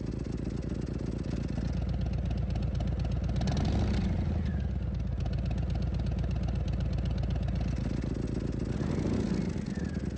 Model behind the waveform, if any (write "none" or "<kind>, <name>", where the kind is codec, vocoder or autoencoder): none